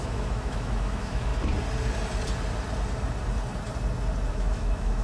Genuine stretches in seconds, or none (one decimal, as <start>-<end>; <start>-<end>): 1.3-4.3